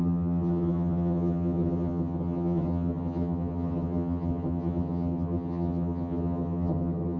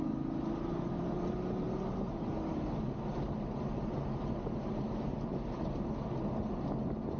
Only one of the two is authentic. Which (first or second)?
second